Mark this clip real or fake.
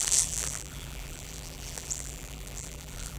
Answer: fake